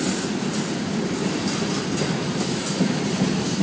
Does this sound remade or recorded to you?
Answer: recorded